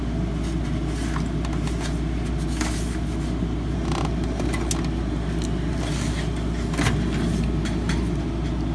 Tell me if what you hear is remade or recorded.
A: recorded